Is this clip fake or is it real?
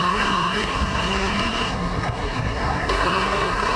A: fake